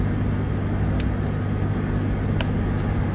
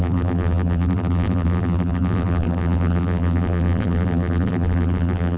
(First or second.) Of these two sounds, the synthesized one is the second